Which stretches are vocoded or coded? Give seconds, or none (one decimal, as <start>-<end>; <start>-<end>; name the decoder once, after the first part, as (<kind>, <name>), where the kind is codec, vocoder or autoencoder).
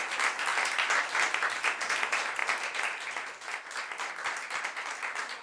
none